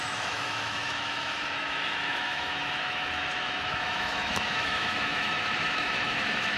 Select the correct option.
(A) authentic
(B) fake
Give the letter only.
B